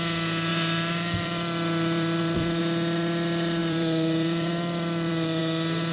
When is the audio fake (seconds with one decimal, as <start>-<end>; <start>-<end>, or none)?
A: 0.5-2.6; 3.6-5.4